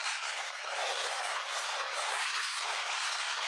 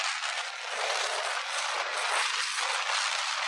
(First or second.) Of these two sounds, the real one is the second